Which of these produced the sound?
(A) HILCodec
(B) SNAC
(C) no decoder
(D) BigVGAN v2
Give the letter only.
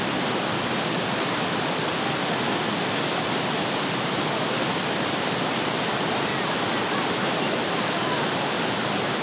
C